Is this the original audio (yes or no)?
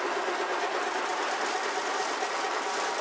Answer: yes